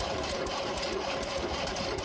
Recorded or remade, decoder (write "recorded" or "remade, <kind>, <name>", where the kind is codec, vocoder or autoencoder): recorded